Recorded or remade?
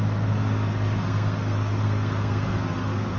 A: remade